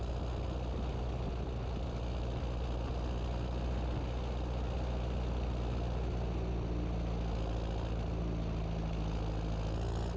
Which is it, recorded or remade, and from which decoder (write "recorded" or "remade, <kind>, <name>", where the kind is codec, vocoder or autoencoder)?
recorded